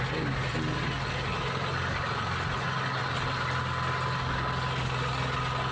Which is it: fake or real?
real